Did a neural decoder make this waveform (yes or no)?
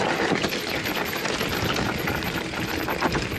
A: no